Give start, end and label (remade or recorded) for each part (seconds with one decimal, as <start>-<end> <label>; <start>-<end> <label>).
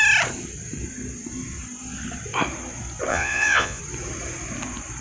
0.0-3.1 recorded; 3.1-3.8 remade; 3.8-5.0 recorded